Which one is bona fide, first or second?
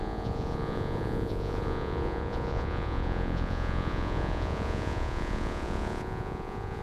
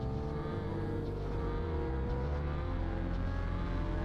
second